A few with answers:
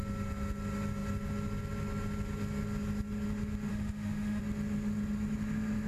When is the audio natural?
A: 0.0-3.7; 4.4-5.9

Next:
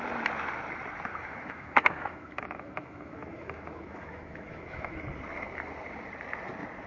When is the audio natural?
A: 0.0-1.1; 5.0-6.9

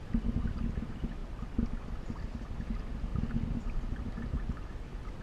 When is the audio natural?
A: 0.0-5.2

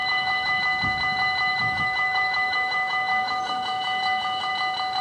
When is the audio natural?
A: 0.6-1.5; 4.5-5.0